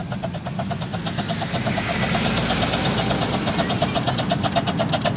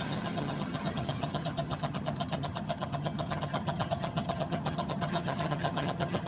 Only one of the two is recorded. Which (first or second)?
first